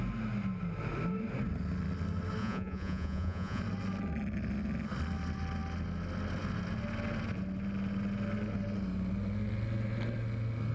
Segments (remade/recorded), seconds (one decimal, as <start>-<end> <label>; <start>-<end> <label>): 0.0-2.4 recorded; 2.4-3.6 remade; 3.6-10.7 recorded